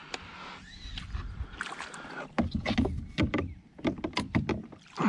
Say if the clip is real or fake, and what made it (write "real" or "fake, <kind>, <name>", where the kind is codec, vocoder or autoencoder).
real